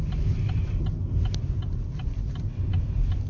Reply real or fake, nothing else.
real